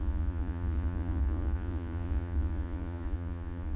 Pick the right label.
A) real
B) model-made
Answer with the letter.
B